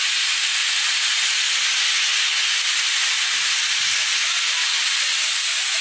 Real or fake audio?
real